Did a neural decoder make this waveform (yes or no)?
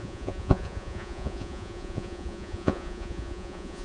yes